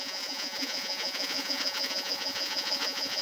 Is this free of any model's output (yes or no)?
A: no